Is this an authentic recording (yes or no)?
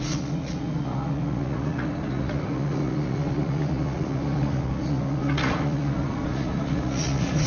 no